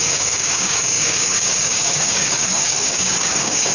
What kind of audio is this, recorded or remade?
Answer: remade